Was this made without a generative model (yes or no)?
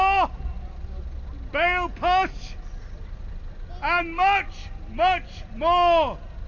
yes